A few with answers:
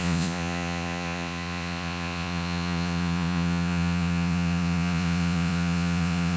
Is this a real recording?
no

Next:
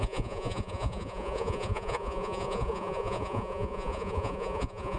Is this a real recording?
no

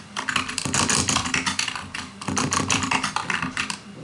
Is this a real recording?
no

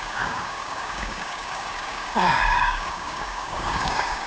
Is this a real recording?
no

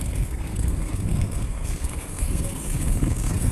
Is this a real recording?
no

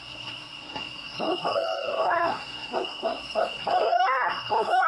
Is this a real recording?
no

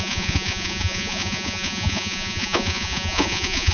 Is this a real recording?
no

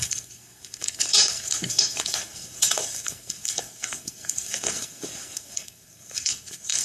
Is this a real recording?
no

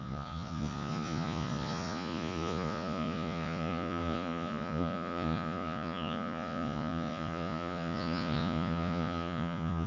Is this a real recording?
no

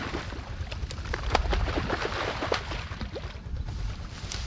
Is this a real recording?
yes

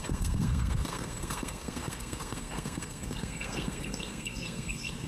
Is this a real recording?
no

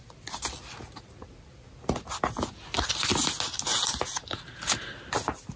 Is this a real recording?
yes